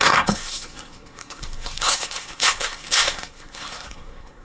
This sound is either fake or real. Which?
fake